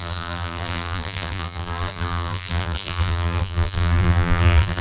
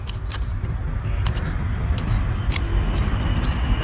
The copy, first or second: first